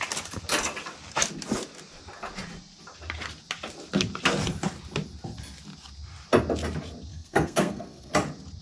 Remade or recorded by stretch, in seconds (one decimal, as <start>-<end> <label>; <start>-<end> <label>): 0.0-7.1 recorded; 7.1-8.1 remade; 8.1-8.6 recorded